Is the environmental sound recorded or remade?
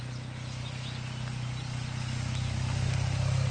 recorded